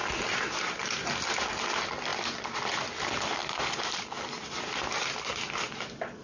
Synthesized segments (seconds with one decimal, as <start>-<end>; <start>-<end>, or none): 0.0-1.1; 2.1-2.9